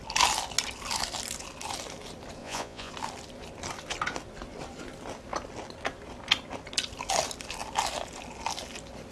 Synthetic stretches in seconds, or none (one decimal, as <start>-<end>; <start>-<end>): 2.4-2.9